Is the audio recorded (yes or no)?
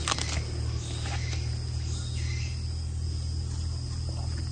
yes